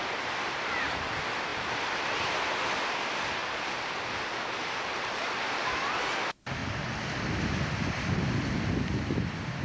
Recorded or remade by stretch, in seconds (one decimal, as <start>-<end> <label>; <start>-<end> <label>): 0.0-3.4 remade; 3.4-6.0 recorded; 6.0-9.6 remade